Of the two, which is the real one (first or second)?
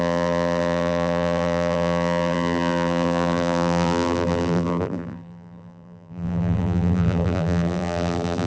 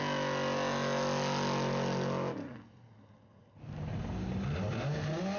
second